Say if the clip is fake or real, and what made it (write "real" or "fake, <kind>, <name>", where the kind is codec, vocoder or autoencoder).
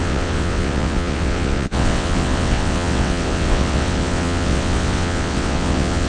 fake, vocoder, WaveNeXt